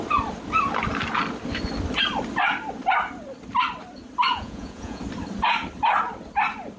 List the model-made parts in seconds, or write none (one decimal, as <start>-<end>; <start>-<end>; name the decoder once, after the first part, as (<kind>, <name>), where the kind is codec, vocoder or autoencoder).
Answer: 4.3-5.0 (vocoder, Vocos)